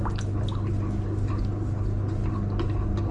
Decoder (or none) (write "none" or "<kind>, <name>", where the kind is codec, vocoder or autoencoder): none